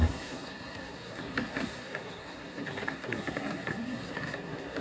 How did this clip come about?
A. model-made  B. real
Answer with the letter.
A